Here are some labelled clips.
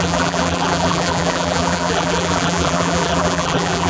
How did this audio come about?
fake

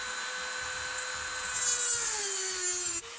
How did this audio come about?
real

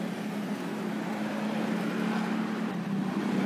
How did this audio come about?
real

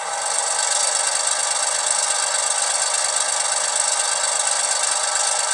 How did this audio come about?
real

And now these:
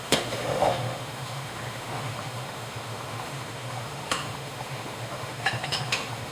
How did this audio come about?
fake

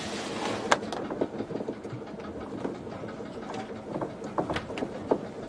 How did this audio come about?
real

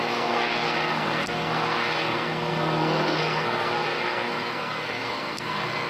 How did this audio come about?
fake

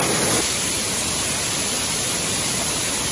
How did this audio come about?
real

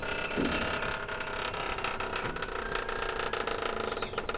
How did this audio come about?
real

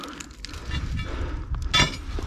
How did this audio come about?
real